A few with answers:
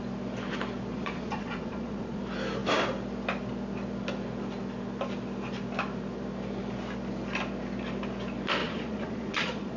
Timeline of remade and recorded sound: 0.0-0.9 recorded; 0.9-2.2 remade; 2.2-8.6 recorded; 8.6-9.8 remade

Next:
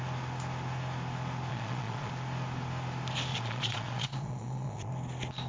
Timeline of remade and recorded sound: 0.0-1.5 recorded; 1.5-2.1 remade; 2.1-3.3 recorded; 3.3-4.9 remade; 4.9-5.5 recorded

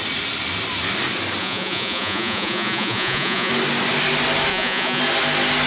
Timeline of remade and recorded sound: 0.0-1.4 recorded; 1.4-3.5 remade; 3.5-4.5 recorded; 4.5-5.0 remade; 5.0-5.7 recorded